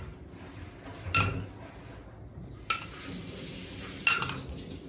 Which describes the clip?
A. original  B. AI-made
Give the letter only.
A